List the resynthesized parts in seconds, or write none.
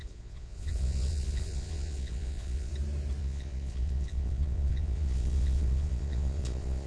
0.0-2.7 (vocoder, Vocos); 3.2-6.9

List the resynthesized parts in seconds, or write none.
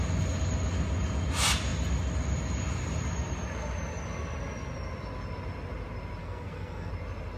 6.2-6.9 (codec, SNAC)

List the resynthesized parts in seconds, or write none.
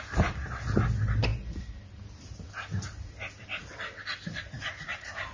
none